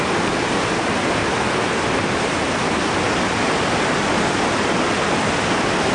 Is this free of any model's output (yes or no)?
yes